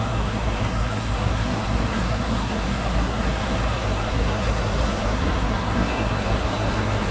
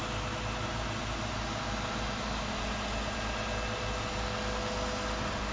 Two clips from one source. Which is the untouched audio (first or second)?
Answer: second